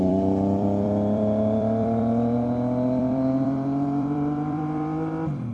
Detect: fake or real fake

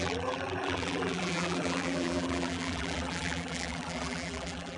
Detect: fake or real fake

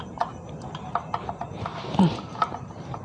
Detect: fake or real fake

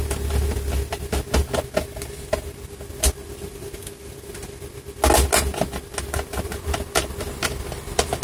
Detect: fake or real real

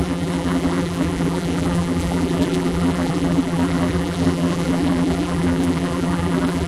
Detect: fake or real fake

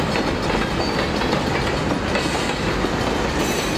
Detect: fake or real real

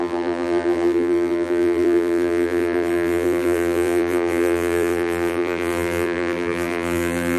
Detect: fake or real fake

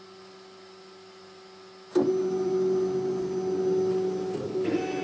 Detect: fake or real real